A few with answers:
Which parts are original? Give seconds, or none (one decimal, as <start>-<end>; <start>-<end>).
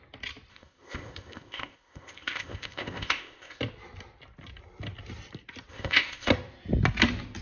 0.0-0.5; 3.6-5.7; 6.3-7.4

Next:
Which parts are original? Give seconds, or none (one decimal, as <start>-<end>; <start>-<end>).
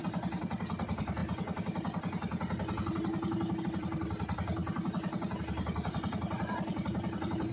1.2-3.6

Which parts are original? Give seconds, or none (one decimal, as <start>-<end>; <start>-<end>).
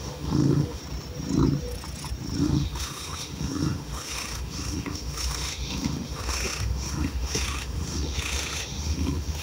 0.8-2.4